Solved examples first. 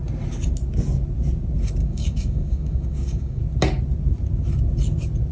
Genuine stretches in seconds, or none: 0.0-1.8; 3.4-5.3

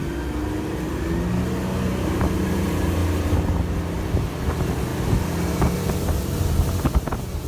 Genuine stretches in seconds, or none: 0.0-4.9; 6.8-7.5